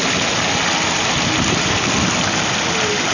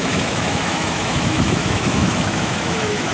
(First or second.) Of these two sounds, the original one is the first